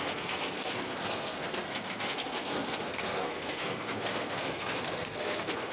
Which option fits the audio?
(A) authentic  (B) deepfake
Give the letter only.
B